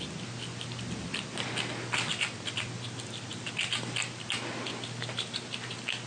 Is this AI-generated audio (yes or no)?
no